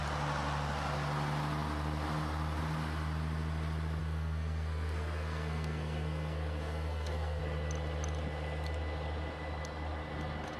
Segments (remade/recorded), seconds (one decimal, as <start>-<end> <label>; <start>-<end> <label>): 0.0-4.0 recorded; 4.0-7.4 remade; 7.4-10.6 recorded